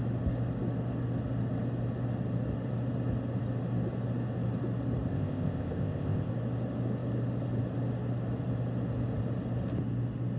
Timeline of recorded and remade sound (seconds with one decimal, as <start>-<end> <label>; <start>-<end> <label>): 0.0-5.1 recorded; 5.1-6.3 remade; 6.3-10.4 recorded

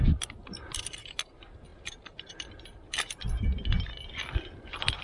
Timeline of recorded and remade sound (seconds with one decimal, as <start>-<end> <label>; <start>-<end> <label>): 0.0-0.4 recorded; 0.4-0.9 remade; 0.9-1.7 recorded; 1.7-5.0 remade